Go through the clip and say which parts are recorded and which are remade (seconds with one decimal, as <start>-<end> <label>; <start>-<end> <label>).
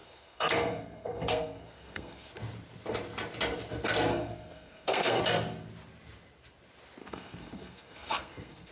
0.0-2.3 remade; 2.3-4.1 recorded; 4.1-5.2 remade; 5.2-7.0 recorded; 7.0-8.7 remade